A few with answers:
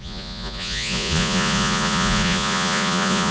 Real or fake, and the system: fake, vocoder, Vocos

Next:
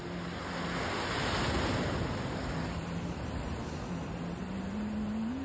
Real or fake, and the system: real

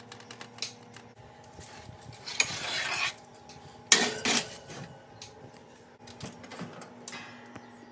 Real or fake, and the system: real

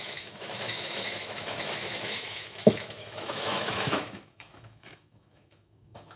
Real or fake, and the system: fake, autoencoder, DAC-VAE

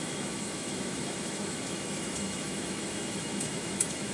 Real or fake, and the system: fake, autoencoder, DAC-VAE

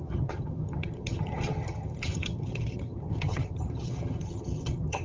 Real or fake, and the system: fake, vocoder, HiFi-GAN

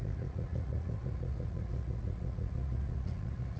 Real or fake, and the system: fake, vocoder, Vocos